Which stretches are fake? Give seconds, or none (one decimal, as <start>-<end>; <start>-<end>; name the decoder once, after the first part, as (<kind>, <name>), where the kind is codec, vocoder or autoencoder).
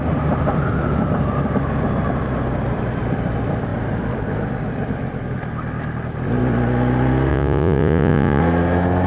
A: 7.3-8.4 (vocoder, Vocos)